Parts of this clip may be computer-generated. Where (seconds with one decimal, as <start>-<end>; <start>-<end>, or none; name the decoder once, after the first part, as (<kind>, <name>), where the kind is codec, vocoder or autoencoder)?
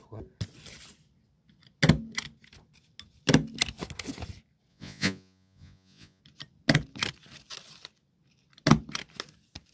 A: 4.7-6.2 (vocoder, Vocos)